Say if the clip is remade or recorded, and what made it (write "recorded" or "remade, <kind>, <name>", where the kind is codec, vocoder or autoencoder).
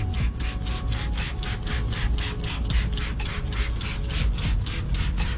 recorded